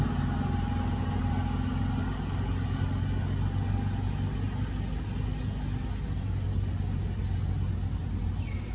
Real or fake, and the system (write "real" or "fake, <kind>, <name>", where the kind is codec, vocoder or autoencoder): real